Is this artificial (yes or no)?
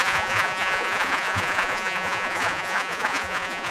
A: yes